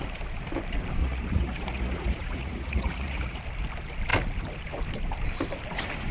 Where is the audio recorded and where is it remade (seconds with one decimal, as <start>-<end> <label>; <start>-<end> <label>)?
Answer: 0.0-1.0 recorded; 1.0-3.4 remade; 3.4-6.1 recorded